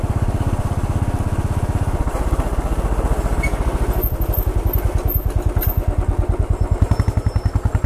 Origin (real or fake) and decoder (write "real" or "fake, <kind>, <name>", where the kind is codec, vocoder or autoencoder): real